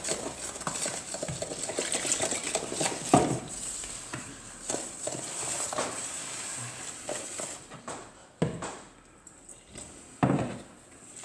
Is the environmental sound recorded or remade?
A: recorded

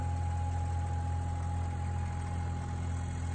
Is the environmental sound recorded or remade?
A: recorded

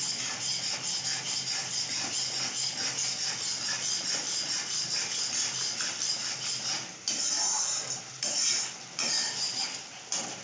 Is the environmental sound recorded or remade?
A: recorded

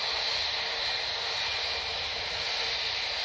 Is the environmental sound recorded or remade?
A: recorded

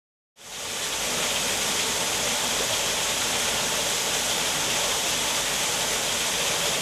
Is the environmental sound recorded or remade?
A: recorded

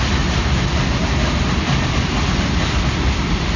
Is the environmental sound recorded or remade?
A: recorded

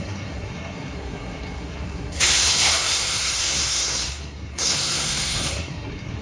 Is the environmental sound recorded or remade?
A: remade